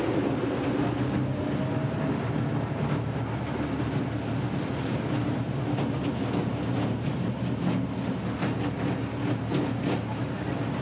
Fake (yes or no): no